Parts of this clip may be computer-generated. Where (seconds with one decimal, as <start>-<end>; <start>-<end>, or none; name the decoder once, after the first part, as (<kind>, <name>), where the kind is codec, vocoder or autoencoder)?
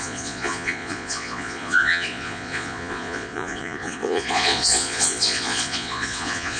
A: 0.0-6.6 (vocoder, Vocos)